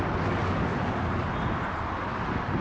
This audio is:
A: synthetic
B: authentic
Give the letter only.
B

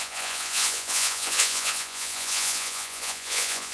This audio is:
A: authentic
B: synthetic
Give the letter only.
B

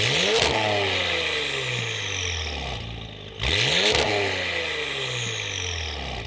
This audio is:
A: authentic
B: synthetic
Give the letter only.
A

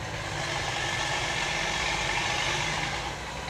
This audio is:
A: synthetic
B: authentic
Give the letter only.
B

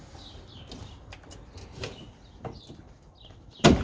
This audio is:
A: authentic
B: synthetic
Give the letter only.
A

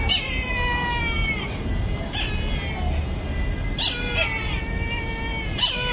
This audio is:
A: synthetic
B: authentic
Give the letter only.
B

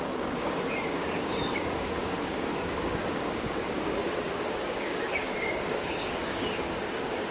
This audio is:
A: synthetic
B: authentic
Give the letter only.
A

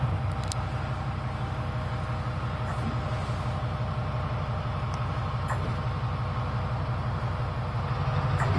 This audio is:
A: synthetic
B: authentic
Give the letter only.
B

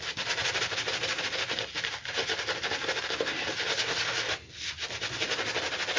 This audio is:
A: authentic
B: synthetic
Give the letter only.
A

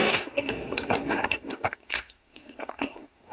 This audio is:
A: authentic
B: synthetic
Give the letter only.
B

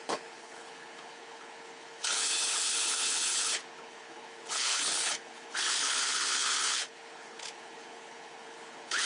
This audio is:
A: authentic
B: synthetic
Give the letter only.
B